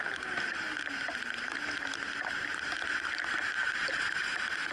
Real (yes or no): yes